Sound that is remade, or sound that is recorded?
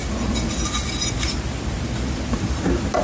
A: recorded